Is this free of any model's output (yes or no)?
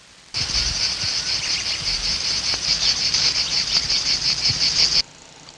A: no